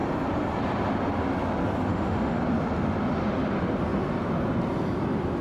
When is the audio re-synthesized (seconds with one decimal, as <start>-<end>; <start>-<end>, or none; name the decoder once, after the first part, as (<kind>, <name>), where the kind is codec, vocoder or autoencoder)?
1.9-2.4 (autoencoder, DAC-VAE)